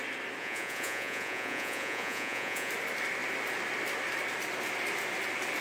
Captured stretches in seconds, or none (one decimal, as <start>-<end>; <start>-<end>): 0.0-0.4; 2.7-5.6